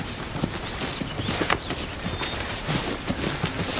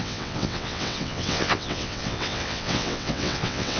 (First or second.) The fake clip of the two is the second